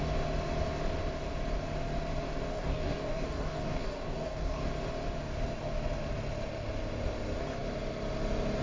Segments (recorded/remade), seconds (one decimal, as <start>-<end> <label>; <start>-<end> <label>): 0.0-2.5 recorded; 2.5-4.6 remade; 4.6-8.6 recorded